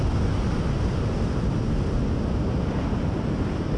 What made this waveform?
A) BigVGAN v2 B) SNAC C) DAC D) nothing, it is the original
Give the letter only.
D